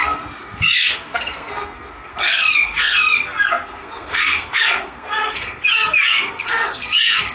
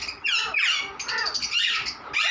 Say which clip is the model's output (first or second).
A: first